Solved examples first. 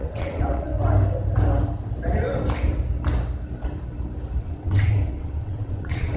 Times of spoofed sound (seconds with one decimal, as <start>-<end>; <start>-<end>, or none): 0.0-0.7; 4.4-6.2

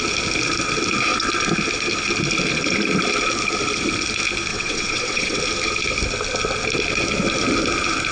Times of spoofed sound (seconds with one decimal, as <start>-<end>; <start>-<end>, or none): 4.5-5.4

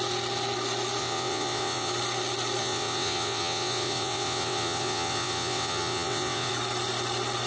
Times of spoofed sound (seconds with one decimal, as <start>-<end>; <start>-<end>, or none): 1.0-1.9; 2.6-6.5

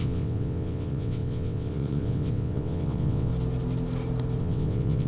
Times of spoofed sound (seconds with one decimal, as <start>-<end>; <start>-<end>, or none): 0.0-3.3; 4.4-5.1

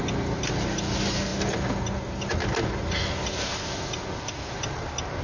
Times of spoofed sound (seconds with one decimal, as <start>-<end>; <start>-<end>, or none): none

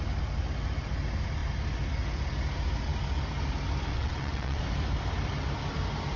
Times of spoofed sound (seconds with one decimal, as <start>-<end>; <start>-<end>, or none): 3.9-4.6

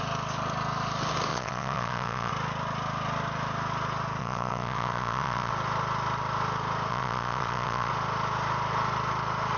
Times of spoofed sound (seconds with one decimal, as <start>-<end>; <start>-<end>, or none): 1.3-2.3; 4.2-5.5; 6.9-7.9

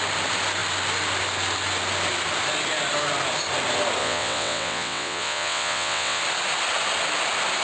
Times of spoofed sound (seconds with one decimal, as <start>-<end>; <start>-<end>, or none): 4.0-6.2